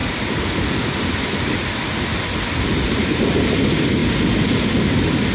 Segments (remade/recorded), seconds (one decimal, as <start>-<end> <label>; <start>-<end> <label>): 0.0-5.3 recorded